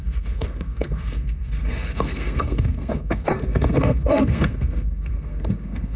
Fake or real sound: fake